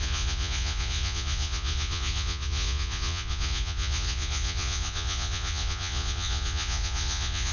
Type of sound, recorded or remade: remade